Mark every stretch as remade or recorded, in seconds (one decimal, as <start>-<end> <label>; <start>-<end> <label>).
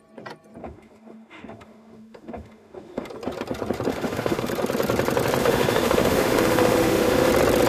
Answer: 0.0-0.6 recorded; 0.6-3.1 remade; 3.1-3.9 recorded; 3.9-4.5 remade; 4.5-5.4 recorded; 5.4-7.3 remade; 7.3-7.7 recorded